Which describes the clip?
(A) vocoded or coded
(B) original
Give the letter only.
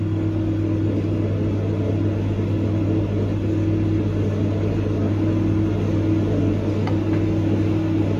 B